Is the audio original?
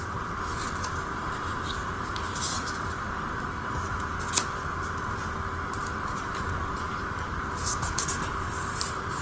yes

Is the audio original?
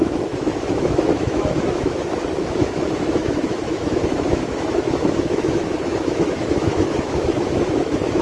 no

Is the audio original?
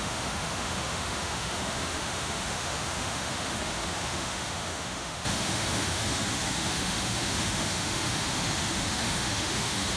no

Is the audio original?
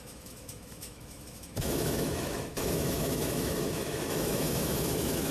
no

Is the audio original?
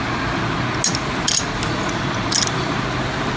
yes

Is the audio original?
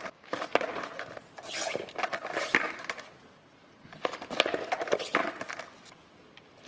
yes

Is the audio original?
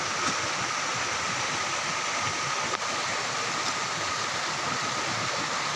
yes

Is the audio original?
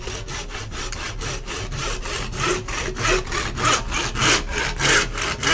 yes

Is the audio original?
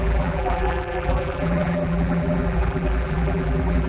no